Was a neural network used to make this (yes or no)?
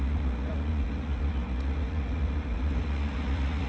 yes